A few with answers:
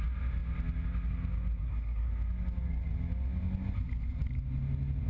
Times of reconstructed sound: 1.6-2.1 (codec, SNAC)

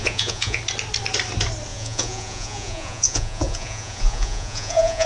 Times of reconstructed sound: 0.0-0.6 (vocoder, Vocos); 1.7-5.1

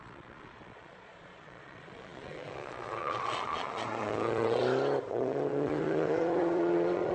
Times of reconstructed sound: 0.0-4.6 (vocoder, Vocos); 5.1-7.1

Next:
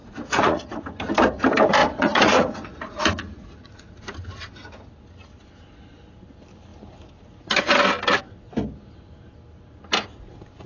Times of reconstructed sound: 0.0-0.8 (vocoder, Vocos); 1.8-4.0